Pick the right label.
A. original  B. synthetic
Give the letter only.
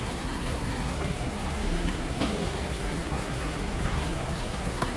B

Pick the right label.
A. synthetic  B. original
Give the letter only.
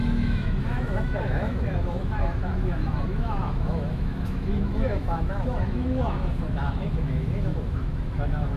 A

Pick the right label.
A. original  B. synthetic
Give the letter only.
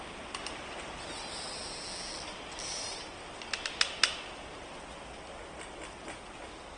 A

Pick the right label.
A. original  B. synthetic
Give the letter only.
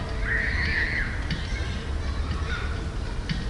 B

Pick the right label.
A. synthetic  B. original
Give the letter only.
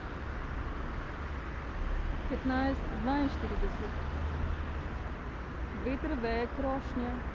B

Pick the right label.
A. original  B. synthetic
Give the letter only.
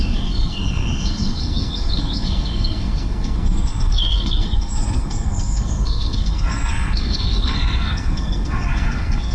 B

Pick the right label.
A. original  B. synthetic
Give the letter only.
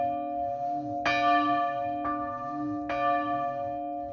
A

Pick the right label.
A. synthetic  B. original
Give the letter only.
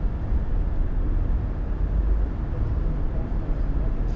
B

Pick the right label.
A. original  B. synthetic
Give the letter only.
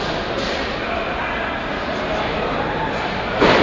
A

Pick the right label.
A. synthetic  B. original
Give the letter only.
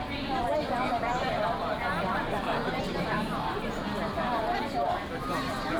B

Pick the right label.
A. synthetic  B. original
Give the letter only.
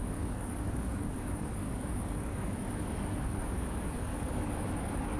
A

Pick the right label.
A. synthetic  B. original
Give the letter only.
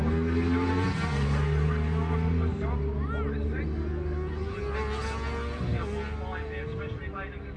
B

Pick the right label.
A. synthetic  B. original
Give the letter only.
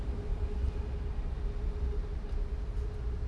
B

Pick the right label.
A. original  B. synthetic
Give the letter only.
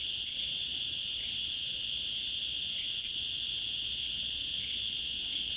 B